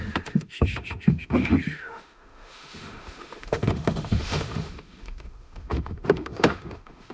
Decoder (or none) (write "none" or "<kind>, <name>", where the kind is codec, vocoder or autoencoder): autoencoder, DAC-VAE